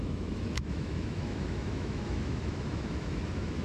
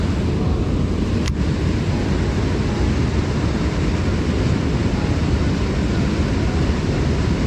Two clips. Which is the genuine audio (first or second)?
second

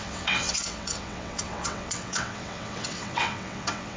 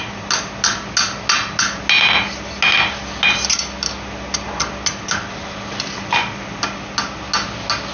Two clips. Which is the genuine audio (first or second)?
second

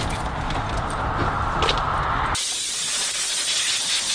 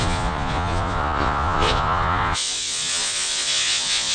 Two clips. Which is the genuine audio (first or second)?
first